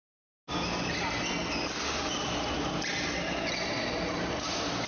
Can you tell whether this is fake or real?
real